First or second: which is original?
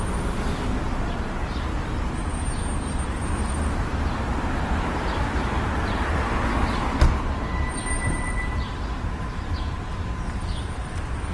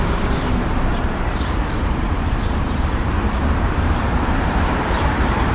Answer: first